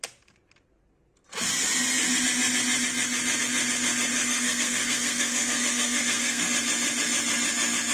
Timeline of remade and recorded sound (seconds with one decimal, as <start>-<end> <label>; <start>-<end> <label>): 0.0-4.1 recorded; 4.1-6.5 remade; 6.5-7.9 recorded